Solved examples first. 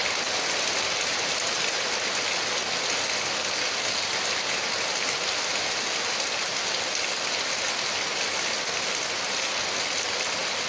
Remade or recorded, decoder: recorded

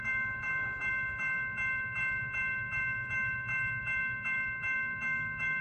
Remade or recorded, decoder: remade, autoencoder, DAC-VAE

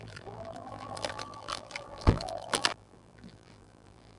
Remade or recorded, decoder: remade, vocoder, BigVGAN v2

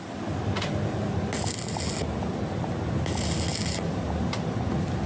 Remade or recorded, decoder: recorded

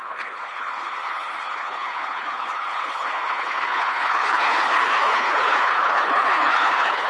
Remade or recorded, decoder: remade, codec, HILCodec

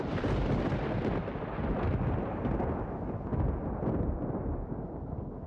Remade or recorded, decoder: recorded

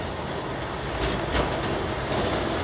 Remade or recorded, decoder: recorded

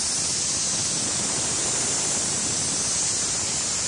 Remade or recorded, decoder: recorded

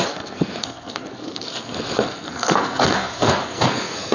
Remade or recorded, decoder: remade, codec, SNAC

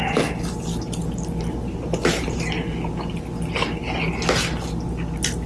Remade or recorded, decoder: recorded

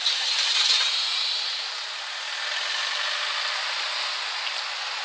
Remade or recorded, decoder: recorded